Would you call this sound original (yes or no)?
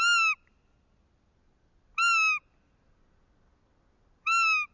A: yes